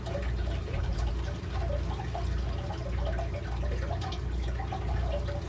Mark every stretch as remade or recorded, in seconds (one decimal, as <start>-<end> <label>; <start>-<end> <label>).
0.0-0.4 recorded; 0.4-1.1 remade; 1.1-5.5 recorded